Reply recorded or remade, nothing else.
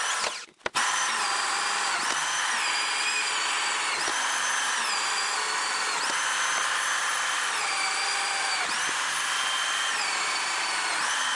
recorded